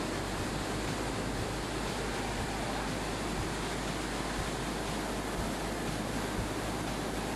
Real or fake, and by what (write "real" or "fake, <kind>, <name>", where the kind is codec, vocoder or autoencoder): real